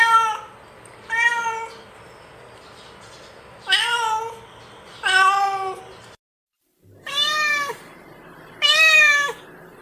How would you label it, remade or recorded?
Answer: remade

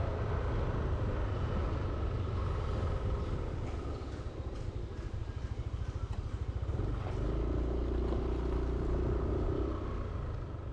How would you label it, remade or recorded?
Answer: recorded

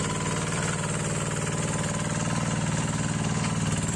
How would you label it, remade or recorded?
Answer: recorded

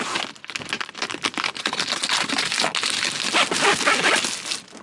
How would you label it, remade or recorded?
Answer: recorded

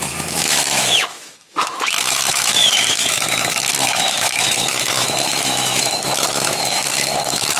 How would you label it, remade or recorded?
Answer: remade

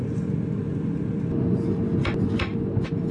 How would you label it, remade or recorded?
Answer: recorded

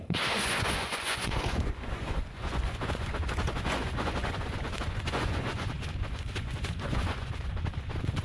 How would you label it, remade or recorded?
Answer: remade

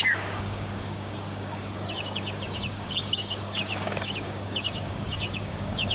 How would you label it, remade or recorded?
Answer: remade